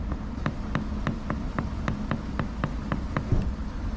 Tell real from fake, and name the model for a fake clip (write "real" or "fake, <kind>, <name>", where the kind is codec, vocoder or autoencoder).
real